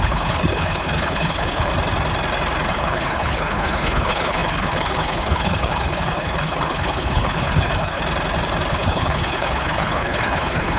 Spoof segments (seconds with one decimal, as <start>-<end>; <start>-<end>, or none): 0.0-1.7; 2.7-8.0; 8.7-10.8

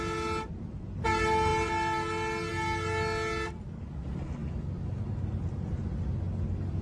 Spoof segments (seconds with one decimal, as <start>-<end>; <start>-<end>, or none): none

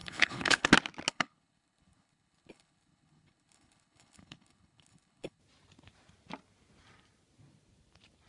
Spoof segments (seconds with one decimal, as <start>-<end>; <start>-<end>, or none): 0.0-0.7; 1.1-5.4

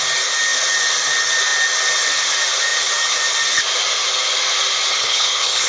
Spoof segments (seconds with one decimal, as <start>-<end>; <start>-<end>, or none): 4.9-5.7

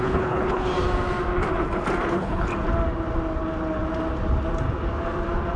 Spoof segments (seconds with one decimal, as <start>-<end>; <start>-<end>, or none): 0.0-0.7; 2.1-2.5

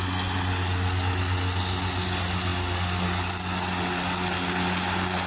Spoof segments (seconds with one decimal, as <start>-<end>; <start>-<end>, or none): none